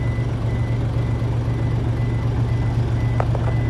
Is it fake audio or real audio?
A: real